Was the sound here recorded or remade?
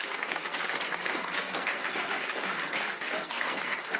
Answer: remade